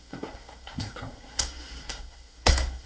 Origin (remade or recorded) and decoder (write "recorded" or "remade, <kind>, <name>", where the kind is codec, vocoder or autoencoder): remade, codec, SNAC